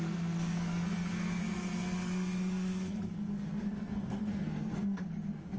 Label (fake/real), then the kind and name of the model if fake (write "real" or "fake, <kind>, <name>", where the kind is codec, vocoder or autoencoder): fake, codec, SNAC